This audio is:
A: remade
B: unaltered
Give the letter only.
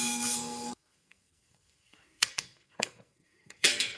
A